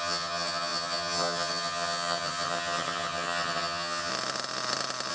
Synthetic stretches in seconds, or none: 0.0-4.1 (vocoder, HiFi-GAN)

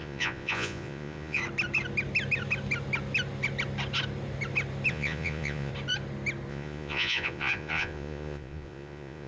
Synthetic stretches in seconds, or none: 0.0-1.4 (vocoder, Vocos); 4.9-5.7; 6.5-9.3

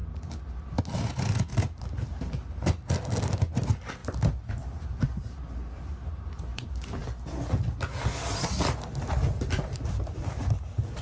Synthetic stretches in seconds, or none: none

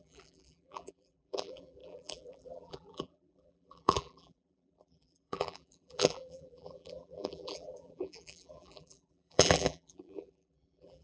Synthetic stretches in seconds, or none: 0.0-11.0 (vocoder, BigVGAN v2)